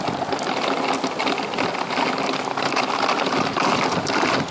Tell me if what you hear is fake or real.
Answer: real